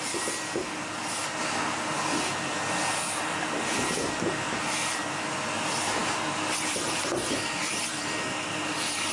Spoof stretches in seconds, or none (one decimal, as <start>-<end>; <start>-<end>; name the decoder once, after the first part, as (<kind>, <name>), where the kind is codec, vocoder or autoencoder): none